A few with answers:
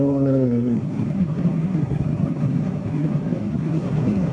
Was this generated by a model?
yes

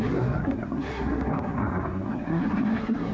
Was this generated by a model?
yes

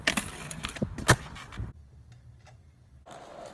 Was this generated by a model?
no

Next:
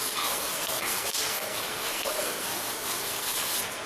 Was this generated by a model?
yes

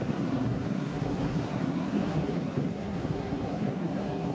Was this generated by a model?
yes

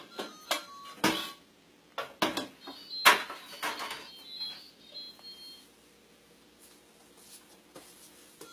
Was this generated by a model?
no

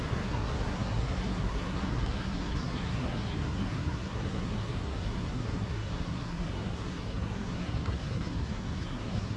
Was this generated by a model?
yes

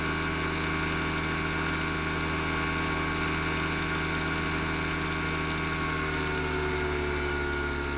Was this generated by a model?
no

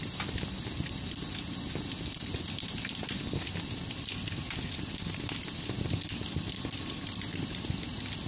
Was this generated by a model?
no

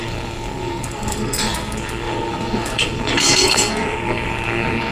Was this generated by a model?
yes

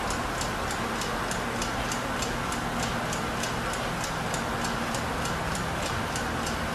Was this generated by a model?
no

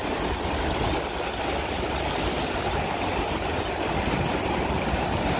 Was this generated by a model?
no